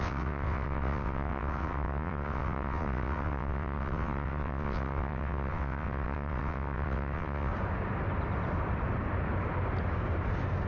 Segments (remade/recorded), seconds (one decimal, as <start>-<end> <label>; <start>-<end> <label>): 0.0-7.5 remade; 7.5-10.7 recorded